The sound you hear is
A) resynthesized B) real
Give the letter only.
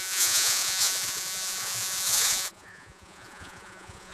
A